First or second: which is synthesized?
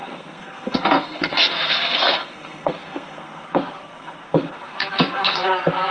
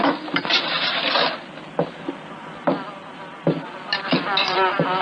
first